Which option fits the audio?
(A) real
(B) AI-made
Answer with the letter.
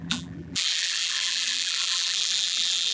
B